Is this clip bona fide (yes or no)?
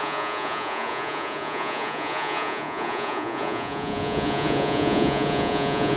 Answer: no